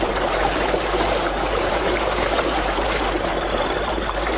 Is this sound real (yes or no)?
no